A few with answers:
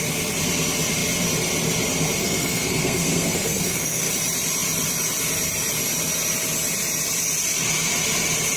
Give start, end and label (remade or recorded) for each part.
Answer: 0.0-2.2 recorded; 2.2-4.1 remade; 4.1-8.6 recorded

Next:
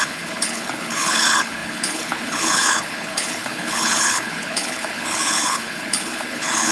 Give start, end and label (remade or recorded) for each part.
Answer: 0.0-6.7 remade

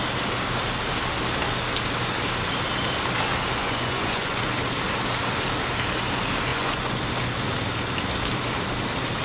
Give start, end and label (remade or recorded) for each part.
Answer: 0.0-3.6 recorded; 3.6-4.4 remade; 4.4-6.5 recorded; 6.5-7.0 remade; 7.0-9.2 recorded

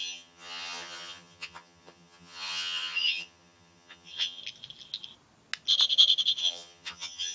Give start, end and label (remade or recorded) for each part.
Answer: 0.0-4.4 remade; 4.4-6.4 recorded; 6.4-7.3 remade

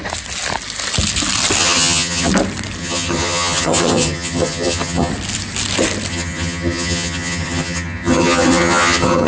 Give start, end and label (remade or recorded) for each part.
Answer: 0.0-1.6 recorded; 1.6-2.3 remade; 2.3-2.8 recorded; 2.8-5.1 remade; 5.1-6.1 recorded; 6.1-9.3 remade

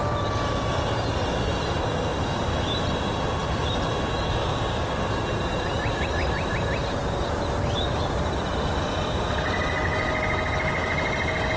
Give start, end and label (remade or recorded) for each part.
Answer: 0.0-4.4 recorded; 4.4-5.0 remade; 5.0-11.6 recorded